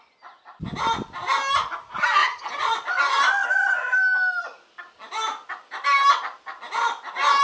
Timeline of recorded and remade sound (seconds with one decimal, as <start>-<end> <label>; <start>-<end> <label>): 0.0-2.2 recorded; 2.2-2.9 remade; 2.9-7.4 recorded